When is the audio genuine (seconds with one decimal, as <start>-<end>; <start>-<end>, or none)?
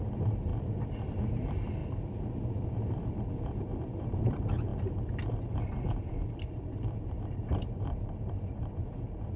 0.5-1.1; 1.8-2.5; 4.7-5.3